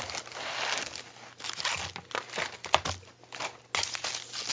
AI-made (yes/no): no